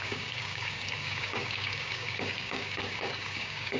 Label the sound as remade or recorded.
remade